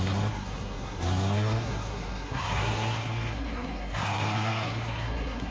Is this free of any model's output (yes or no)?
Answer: no